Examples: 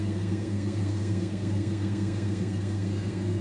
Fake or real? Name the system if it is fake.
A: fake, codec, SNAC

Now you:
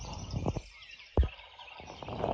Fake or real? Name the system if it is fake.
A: fake, vocoder, BigVGAN v2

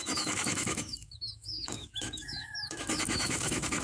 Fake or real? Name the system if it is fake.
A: fake, autoencoder, DAC-VAE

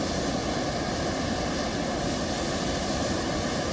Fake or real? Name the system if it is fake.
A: real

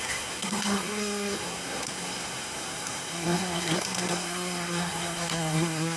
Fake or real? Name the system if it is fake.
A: fake, codec, SNAC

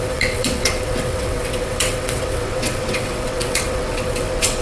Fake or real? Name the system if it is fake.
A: fake, vocoder, WaveNeXt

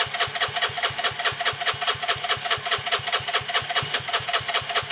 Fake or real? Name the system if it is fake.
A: real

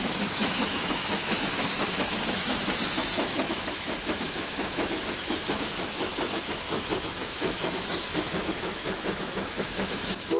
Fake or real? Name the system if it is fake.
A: fake, autoencoder, DAC-VAE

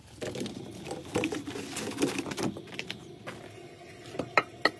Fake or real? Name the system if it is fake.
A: real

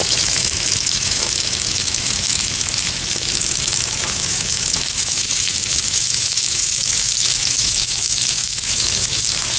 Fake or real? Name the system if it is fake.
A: fake, autoencoder, DAC-VAE